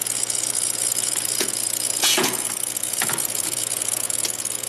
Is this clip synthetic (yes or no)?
yes